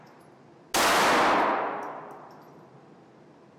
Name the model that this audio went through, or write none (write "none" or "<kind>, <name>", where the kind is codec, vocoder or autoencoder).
none